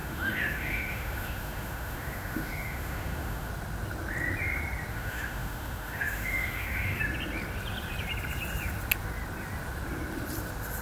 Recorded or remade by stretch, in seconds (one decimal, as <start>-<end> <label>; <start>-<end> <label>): 0.0-3.5 remade; 3.5-4.9 recorded; 4.9-7.0 remade; 7.0-10.8 recorded